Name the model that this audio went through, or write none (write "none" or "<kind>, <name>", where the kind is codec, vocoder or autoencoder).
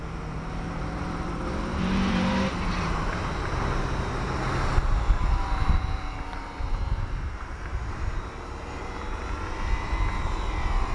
vocoder, BigVGAN v2